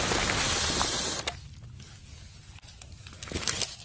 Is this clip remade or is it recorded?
recorded